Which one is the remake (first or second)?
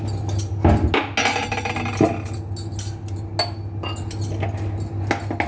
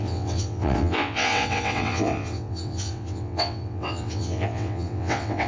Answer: second